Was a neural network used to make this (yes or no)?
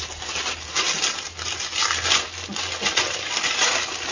no